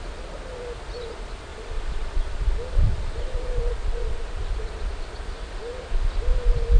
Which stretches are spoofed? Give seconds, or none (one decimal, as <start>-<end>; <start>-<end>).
1.5-4.9